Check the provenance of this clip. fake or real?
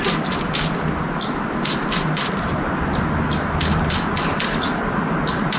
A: real